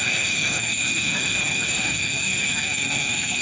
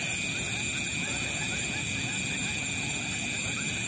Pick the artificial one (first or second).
first